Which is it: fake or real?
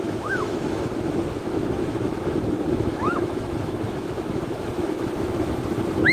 fake